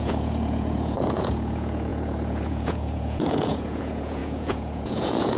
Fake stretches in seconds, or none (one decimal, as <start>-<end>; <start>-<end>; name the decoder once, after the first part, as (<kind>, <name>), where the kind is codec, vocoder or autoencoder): 0.0-5.4 (vocoder, Vocos)